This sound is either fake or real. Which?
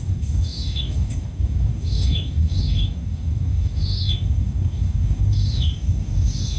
fake